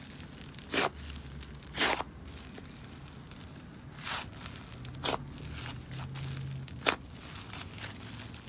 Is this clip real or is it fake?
real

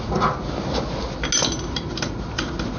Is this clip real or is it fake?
real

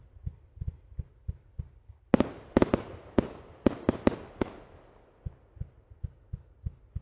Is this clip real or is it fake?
real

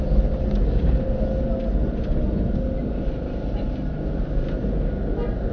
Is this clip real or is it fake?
real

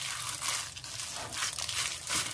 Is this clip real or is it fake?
real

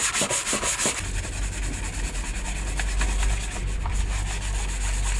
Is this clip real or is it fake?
real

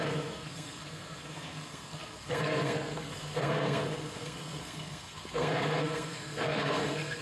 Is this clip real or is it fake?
fake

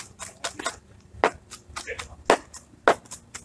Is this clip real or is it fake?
real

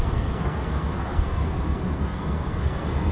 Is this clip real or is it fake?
fake